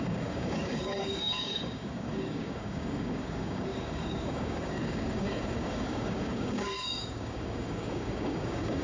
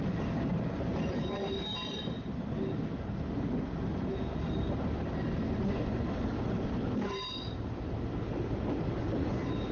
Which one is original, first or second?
second